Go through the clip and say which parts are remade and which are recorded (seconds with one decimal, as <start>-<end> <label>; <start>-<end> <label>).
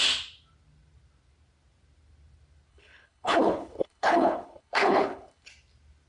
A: 0.0-2.7 recorded; 2.7-5.5 remade; 5.5-6.1 recorded